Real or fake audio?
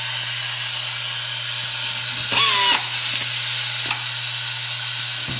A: real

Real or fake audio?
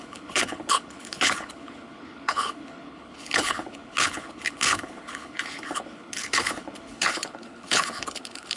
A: fake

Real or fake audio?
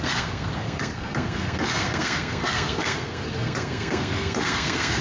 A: fake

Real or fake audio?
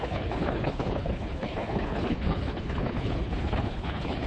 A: fake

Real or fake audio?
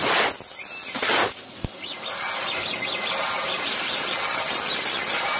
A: real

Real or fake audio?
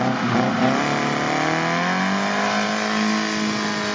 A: real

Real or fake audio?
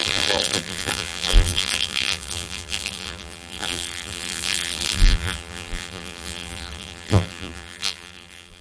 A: fake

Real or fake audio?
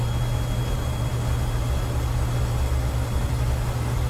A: real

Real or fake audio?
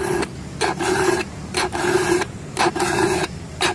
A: fake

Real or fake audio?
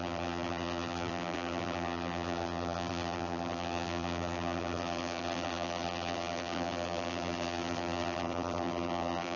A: fake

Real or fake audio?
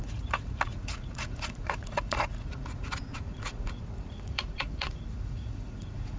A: fake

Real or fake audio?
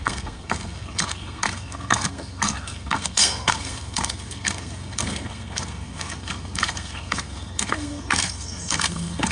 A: fake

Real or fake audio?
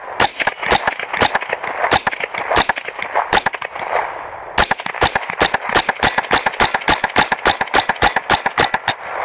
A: real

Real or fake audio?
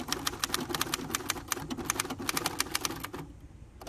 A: real